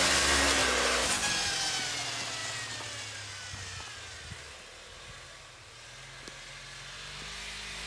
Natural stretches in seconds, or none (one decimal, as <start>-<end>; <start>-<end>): 0.0-7.9